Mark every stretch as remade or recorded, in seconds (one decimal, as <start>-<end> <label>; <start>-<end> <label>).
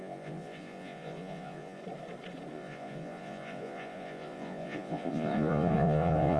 0.0-1.8 remade; 1.8-2.5 recorded; 2.5-6.4 remade